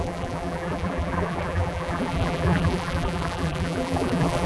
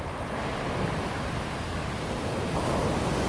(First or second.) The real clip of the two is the second